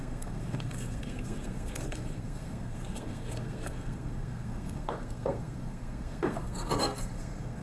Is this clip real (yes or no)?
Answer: no